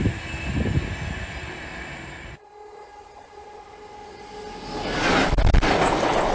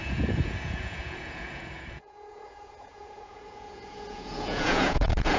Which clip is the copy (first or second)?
second